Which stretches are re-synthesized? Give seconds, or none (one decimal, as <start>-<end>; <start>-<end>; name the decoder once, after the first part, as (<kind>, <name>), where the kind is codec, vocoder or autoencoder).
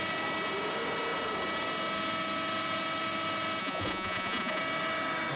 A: 3.6-4.6 (vocoder, Vocos)